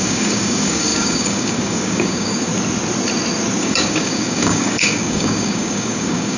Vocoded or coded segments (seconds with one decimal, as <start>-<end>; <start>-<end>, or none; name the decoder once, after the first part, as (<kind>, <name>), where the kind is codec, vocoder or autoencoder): 0.0-2.5 (codec, DAC); 3.6-6.4